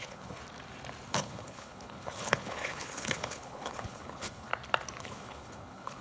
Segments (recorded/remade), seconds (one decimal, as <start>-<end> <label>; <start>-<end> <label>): 0.0-0.4 remade; 0.4-1.1 recorded; 1.1-4.5 remade; 4.5-5.0 recorded; 5.0-6.0 remade